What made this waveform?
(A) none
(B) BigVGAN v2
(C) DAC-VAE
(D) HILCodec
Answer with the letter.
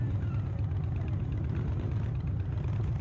B